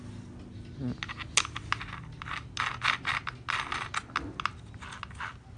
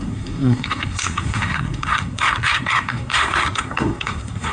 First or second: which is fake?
second